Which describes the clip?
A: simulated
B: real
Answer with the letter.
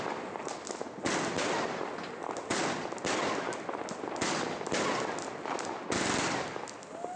B